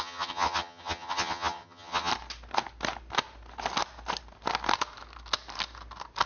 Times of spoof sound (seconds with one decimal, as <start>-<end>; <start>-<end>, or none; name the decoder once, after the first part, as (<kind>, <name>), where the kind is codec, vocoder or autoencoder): 0.0-2.1 (vocoder, HiFi-GAN)